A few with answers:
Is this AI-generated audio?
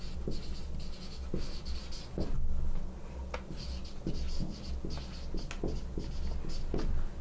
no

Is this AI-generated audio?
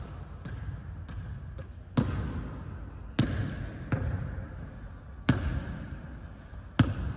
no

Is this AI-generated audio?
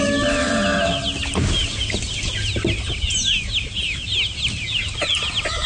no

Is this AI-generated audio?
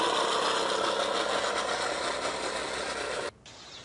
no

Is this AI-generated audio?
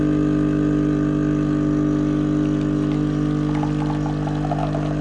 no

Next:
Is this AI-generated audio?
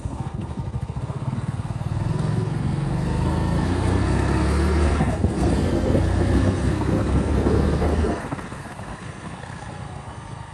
yes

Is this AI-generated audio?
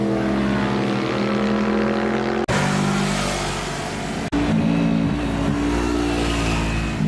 no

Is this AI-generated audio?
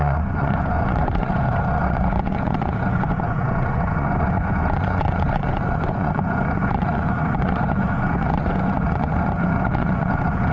yes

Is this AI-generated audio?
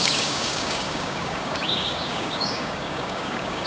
yes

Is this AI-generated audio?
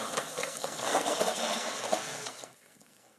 yes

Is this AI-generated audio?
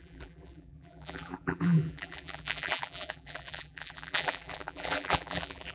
yes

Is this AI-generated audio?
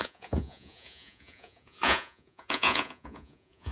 yes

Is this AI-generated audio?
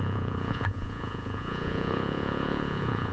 yes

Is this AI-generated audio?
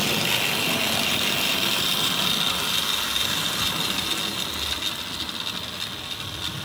no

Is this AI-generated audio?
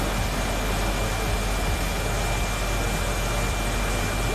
no